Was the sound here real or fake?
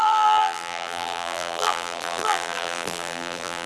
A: fake